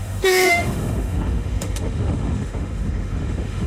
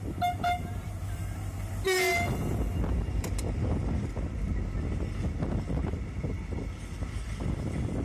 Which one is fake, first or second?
first